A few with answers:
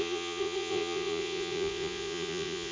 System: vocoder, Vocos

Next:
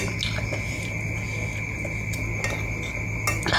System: none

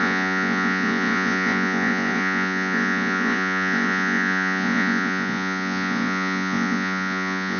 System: vocoder, Vocos